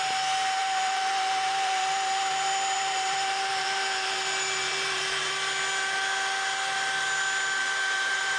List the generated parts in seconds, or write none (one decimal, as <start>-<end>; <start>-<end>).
0.6-5.3; 7.6-8.4